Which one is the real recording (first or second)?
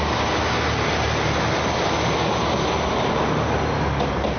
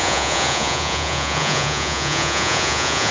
first